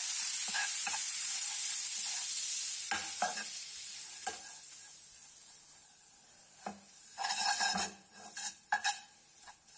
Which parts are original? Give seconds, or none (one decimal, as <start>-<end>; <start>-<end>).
0.0-9.8